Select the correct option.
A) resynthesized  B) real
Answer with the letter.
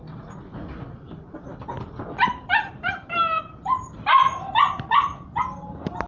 B